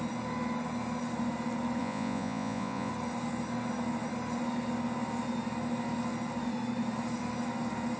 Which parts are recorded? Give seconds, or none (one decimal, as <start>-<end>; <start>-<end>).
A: 0.0-1.8; 2.9-8.0